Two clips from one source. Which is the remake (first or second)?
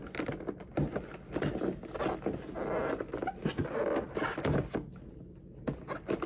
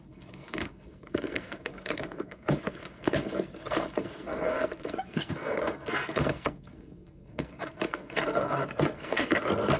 second